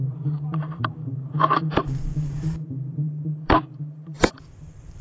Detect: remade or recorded remade